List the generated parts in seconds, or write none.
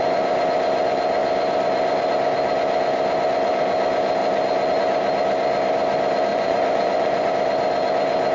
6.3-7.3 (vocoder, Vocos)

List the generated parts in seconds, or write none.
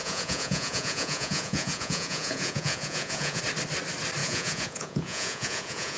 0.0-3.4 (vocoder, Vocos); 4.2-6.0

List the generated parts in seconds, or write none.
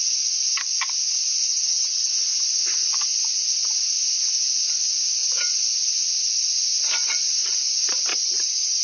1.5-2.1 (vocoder, HiFi-GAN); 8.1-8.8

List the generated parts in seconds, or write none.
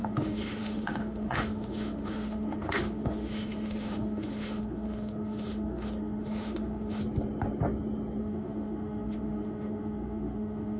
0.0-7.0 (autoencoder, DAC-VAE); 8.2-10.8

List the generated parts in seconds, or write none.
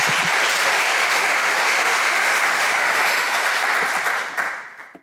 0.6-3.6 (autoencoder, DAC-VAE)